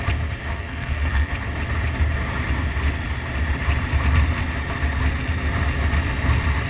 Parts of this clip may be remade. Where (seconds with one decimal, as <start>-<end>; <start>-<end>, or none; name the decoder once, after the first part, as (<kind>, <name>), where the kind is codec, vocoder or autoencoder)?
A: 0.5-1.3 (codec, SNAC)